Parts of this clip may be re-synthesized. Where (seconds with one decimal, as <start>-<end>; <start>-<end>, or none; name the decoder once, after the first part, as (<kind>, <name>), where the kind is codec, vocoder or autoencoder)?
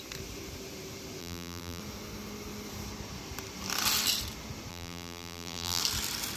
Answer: 1.2-1.8 (vocoder, BigVGAN v2); 4.7-5.8